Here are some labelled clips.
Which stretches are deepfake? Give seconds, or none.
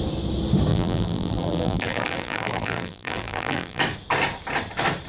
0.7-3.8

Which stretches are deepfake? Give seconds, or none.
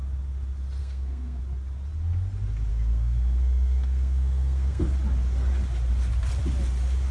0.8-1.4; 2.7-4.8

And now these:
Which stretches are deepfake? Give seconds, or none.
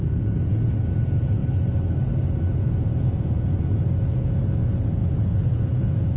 0.0-1.4; 2.5-6.2